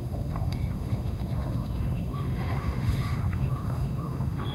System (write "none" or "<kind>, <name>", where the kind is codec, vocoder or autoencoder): autoencoder, DAC-VAE